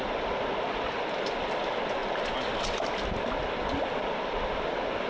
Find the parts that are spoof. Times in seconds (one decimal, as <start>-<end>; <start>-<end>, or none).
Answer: none